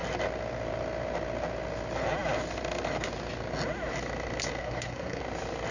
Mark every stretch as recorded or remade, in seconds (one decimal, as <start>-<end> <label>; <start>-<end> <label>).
0.0-4.6 recorded; 4.6-5.2 remade; 5.2-5.7 recorded

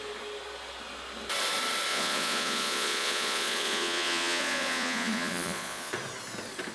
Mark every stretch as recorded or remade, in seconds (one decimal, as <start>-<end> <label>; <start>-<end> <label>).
0.0-1.9 recorded; 1.9-5.9 remade; 5.9-6.7 recorded

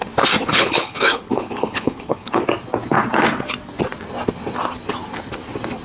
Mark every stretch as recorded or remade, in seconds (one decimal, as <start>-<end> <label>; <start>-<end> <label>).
0.0-0.5 recorded; 0.5-2.4 remade; 2.4-5.8 recorded